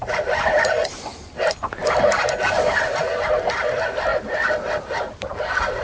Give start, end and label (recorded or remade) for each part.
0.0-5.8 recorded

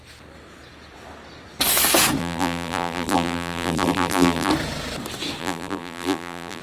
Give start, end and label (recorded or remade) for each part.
0.0-2.2 recorded; 2.2-4.5 remade; 4.5-5.4 recorded; 5.4-6.6 remade

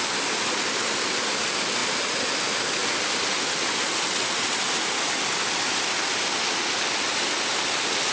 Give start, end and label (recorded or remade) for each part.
0.0-8.1 recorded

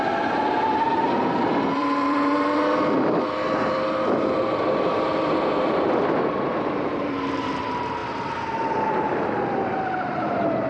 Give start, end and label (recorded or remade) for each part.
0.0-10.7 remade

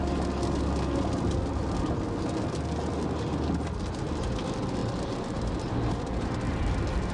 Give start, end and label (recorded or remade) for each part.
0.0-4.8 recorded; 4.8-7.1 remade

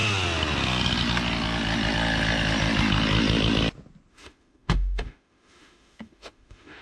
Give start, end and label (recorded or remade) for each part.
0.0-4.1 recorded; 4.1-6.8 remade

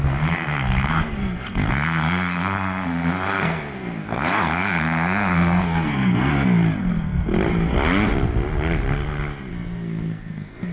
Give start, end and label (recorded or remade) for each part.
0.0-6.3 remade; 6.3-6.8 recorded; 6.8-7.3 remade; 7.3-9.5 recorded; 9.5-10.7 remade

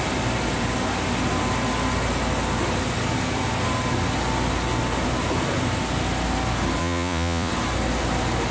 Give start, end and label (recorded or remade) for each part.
0.0-6.8 recorded; 6.8-7.5 remade; 7.5-8.5 recorded